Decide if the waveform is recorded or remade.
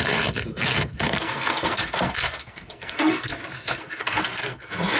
remade